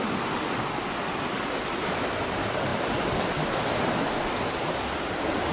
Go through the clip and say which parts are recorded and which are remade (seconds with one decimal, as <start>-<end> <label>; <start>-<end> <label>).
0.0-5.5 recorded